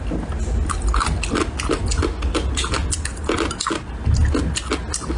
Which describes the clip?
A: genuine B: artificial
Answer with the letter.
A